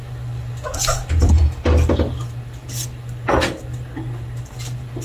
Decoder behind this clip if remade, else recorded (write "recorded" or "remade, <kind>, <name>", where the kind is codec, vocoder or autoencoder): recorded